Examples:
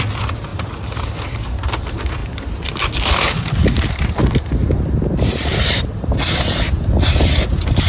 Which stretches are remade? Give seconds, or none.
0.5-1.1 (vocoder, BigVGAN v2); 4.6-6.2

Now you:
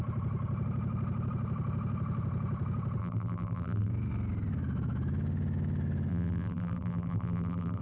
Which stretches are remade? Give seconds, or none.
3.0-3.9 (vocoder, BigVGAN v2); 6.1-7.8

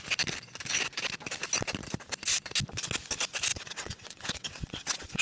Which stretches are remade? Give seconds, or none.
3.5-5.2 (vocoder, WaveNeXt)

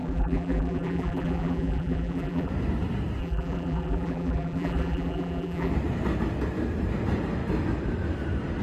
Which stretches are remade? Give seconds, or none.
0.0-2.5 (vocoder, BigVGAN v2); 3.2-5.7